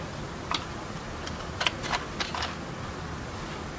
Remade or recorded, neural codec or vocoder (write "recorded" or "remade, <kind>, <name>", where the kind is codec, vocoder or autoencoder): recorded